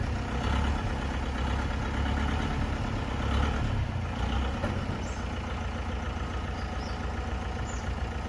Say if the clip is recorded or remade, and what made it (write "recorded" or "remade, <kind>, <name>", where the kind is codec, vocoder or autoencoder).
recorded